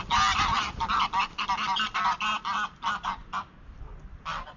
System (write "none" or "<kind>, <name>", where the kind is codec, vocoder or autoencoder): none